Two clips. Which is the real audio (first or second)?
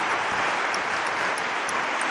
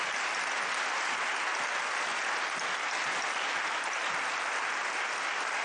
second